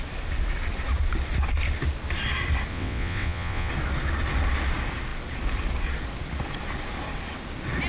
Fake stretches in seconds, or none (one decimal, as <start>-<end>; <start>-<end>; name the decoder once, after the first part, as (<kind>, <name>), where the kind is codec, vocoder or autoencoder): 2.7-3.7 (vocoder, WaveNeXt)